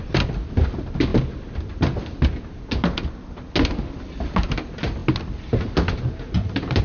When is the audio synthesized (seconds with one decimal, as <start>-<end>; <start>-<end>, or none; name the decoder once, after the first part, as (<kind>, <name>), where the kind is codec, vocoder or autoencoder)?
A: none